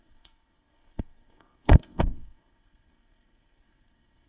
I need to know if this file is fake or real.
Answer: fake